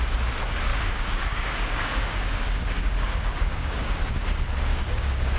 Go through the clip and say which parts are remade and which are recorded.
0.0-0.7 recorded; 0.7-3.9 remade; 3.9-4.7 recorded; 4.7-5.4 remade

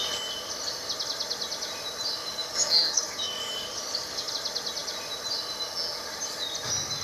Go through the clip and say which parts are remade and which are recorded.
0.0-2.2 recorded; 2.2-4.3 remade; 4.3-7.0 recorded

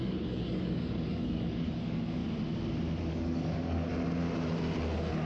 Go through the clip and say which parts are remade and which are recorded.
0.0-2.2 remade; 2.2-3.1 recorded; 3.1-3.9 remade; 3.9-5.3 recorded

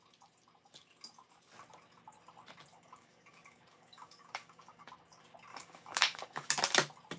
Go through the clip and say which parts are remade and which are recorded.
0.0-2.7 recorded; 2.7-4.9 remade; 4.9-5.5 recorded; 5.5-6.5 remade; 6.5-7.2 recorded

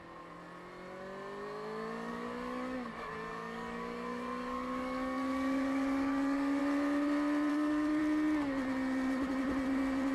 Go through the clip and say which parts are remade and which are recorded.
0.0-2.1 recorded; 2.1-6.6 remade; 6.6-7.5 recorded; 7.5-8.0 remade; 8.0-10.1 recorded

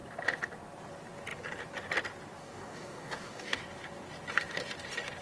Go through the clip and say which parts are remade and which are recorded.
0.0-2.4 recorded; 2.4-3.6 remade; 3.6-5.2 recorded